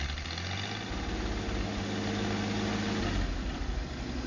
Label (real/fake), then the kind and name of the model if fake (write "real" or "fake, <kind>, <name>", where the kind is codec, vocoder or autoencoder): real